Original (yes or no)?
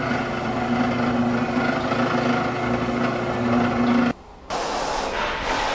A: yes